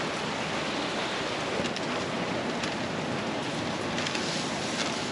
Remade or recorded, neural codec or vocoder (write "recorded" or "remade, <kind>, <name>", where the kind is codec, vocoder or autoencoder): recorded